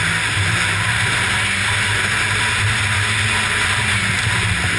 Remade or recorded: recorded